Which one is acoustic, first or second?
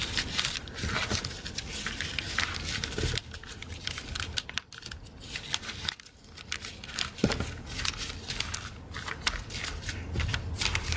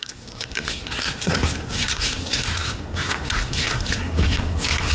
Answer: first